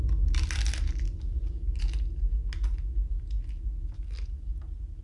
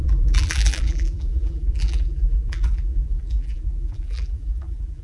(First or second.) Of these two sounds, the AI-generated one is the second